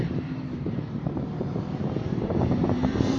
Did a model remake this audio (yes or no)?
yes